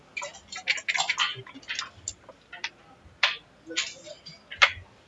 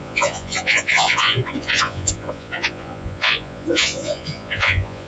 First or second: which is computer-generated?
second